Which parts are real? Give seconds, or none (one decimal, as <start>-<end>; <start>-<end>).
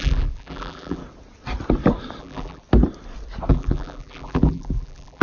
1.0-2.2; 2.6-3.5